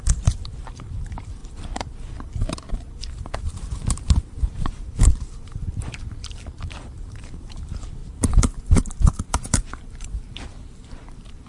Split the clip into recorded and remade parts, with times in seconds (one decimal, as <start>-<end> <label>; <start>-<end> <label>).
0.0-1.4 remade; 1.4-2.7 recorded; 2.7-3.7 remade; 3.7-4.4 recorded; 4.4-11.5 remade